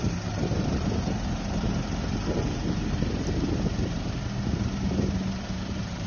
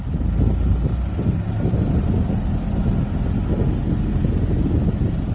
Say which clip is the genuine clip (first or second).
second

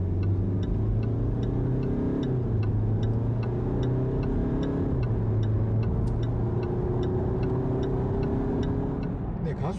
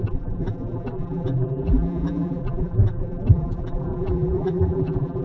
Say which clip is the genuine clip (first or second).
first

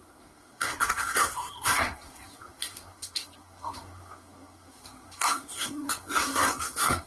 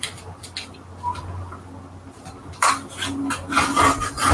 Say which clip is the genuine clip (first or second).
second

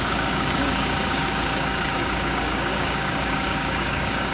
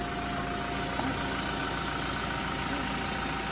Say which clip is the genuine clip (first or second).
second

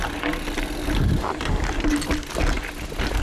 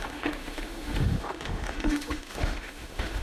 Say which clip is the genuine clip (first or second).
first